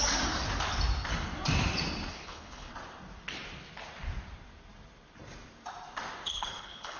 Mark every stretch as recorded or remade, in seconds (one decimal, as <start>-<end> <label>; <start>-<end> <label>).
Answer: 0.0-2.1 recorded; 2.1-2.7 remade; 2.7-6.3 recorded; 6.3-7.0 remade